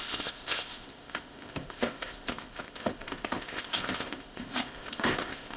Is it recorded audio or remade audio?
remade